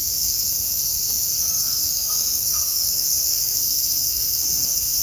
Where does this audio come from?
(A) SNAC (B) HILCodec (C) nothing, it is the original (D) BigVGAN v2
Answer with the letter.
A